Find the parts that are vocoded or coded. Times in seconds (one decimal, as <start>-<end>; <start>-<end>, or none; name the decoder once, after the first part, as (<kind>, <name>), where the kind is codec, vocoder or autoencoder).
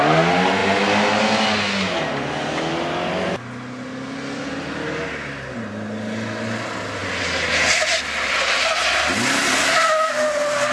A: 7.0-8.0 (vocoder, BigVGAN v2)